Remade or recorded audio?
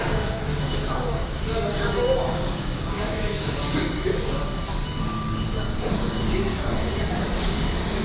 remade